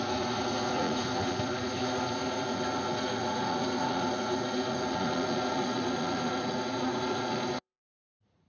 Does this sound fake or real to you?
fake